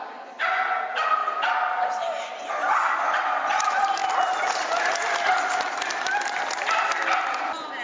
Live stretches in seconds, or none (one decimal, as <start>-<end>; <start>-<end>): 0.0-7.8